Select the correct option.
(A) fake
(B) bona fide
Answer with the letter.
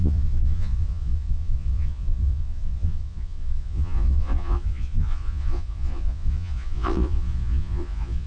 A